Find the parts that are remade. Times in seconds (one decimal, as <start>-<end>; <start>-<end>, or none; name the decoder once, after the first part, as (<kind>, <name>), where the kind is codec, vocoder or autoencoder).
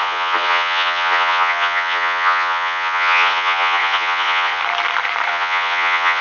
0.0-4.6 (vocoder, Vocos); 5.3-6.2